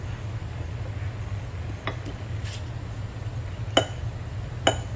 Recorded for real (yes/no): yes